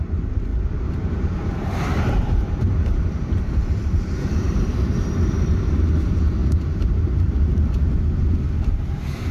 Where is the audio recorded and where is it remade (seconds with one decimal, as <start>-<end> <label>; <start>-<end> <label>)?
0.0-0.5 recorded; 0.5-5.7 remade; 5.7-6.4 recorded; 6.4-7.7 remade; 7.7-9.3 recorded

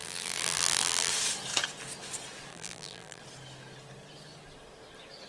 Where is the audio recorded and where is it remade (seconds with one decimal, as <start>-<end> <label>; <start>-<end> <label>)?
0.0-1.1 remade; 1.1-2.5 recorded; 2.5-3.2 remade; 3.2-5.3 recorded

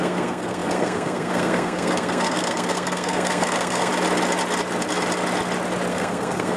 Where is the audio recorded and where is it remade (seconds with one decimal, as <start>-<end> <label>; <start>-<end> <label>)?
0.0-3.9 remade; 3.9-5.9 recorded; 5.9-6.6 remade

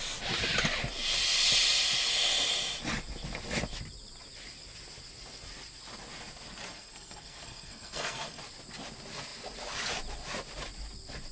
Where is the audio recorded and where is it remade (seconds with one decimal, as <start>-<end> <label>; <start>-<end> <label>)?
0.0-6.7 recorded; 6.7-8.4 remade; 8.4-11.3 recorded

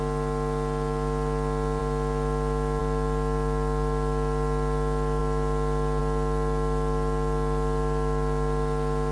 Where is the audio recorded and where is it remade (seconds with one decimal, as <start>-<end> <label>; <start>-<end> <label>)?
0.0-9.1 recorded

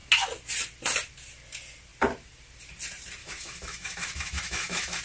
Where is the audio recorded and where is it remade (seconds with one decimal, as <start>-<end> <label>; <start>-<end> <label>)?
0.0-3.2 recorded; 3.2-5.0 remade

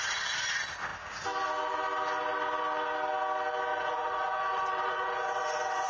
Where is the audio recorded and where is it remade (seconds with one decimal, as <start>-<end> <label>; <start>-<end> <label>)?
0.0-3.7 recorded; 3.7-5.9 remade

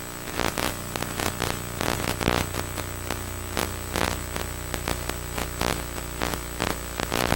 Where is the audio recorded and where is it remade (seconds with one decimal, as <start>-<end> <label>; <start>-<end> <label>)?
0.0-7.4 recorded